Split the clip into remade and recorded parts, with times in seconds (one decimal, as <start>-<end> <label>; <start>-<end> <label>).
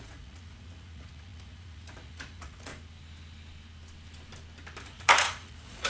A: 0.0-2.7 remade; 2.7-4.8 recorded; 4.8-5.9 remade